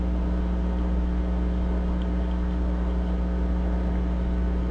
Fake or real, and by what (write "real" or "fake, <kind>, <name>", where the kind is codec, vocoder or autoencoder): real